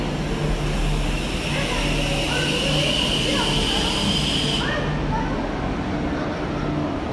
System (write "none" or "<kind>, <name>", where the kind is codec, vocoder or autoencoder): none